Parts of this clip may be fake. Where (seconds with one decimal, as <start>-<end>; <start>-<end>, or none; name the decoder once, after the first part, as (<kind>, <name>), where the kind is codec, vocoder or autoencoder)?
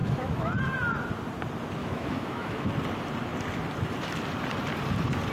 0.0-0.6 (autoencoder, DAC-VAE); 1.8-2.7